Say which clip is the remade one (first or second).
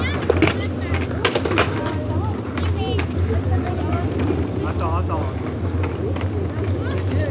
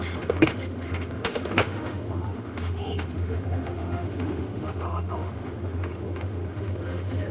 second